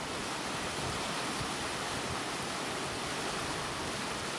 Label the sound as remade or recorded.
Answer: recorded